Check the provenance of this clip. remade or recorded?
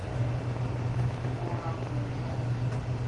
recorded